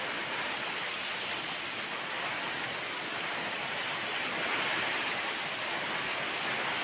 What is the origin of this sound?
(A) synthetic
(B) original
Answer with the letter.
B